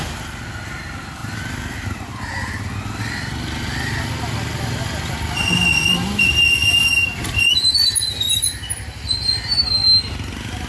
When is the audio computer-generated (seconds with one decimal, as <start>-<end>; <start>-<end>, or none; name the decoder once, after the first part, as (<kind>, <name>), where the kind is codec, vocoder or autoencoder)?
none